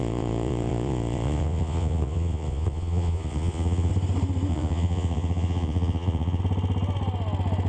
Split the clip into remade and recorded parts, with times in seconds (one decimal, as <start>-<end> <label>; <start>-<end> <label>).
0.0-3.9 remade; 3.9-4.5 recorded; 4.5-6.4 remade; 6.4-7.7 recorded